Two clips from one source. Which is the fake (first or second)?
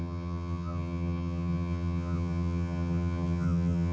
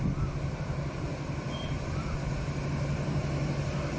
first